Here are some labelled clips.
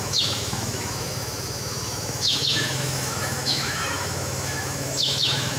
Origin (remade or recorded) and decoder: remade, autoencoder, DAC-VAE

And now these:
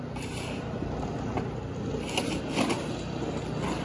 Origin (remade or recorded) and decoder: recorded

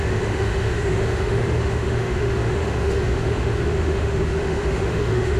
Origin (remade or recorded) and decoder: remade, autoencoder, DAC-VAE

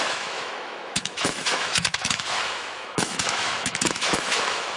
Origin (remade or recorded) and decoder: remade, autoencoder, DAC-VAE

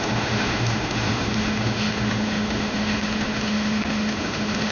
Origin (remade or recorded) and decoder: remade, autoencoder, DAC-VAE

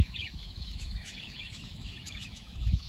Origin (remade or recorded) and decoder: remade, autoencoder, DAC-VAE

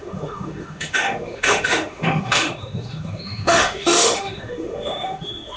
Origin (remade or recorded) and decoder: remade, autoencoder, DAC-VAE